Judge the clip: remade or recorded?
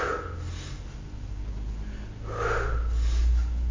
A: recorded